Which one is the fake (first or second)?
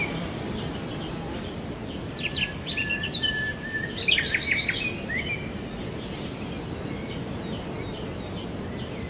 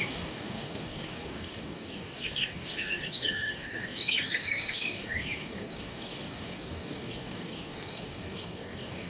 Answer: second